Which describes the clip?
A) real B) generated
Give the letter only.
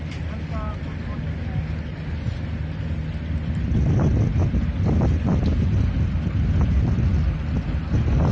A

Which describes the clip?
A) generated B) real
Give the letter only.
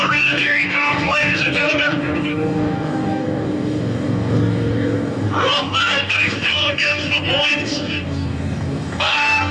A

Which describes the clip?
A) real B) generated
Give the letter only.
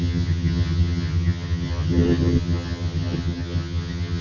B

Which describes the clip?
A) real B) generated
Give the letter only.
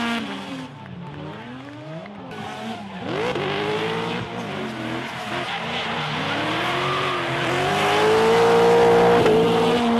A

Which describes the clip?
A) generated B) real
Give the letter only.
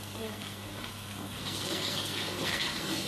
A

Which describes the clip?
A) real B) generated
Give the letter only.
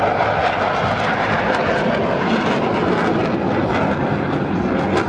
A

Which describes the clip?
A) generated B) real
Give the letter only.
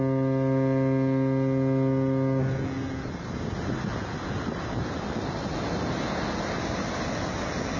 B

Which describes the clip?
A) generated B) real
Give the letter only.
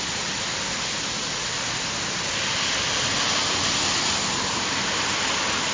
B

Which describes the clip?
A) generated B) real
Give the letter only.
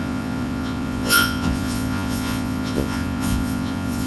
A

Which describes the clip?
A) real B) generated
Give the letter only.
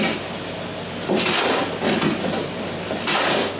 A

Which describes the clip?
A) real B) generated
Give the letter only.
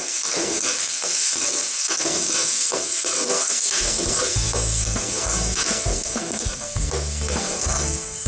B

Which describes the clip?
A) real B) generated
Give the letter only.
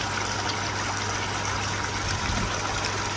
A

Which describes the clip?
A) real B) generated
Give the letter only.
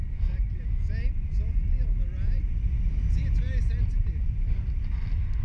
A